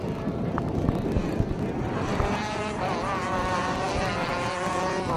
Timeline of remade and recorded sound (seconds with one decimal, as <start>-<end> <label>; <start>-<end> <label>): 0.0-5.2 recorded